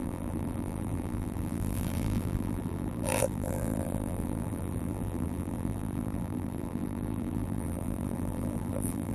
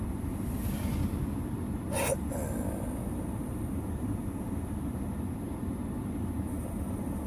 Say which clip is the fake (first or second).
first